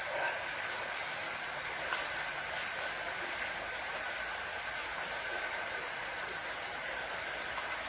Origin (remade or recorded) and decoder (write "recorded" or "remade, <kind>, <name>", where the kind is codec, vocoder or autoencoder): recorded